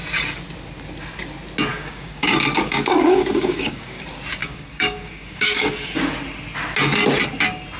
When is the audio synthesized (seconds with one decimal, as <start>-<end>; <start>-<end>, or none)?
1.7-4.0; 4.4-6.0